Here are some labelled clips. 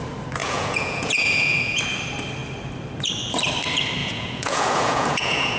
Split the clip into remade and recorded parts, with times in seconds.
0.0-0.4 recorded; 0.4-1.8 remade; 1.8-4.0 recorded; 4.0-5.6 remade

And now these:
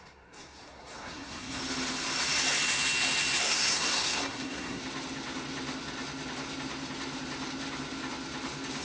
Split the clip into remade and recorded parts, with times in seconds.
0.0-1.6 remade; 1.6-3.4 recorded; 3.4-4.8 remade; 4.8-8.8 recorded

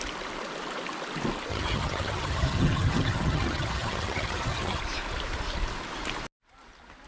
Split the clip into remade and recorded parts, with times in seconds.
0.0-1.5 recorded; 1.5-4.8 remade; 4.8-7.1 recorded